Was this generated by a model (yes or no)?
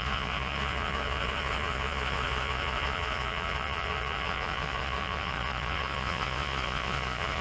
yes